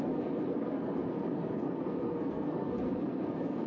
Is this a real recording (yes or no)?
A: no